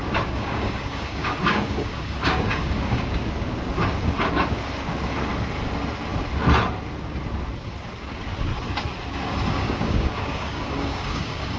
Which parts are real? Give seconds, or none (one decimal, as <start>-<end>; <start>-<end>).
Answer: 5.3-7.6; 8.5-9.5